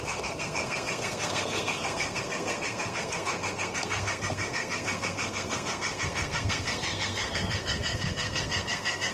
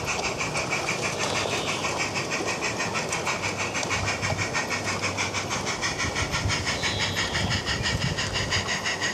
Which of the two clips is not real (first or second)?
first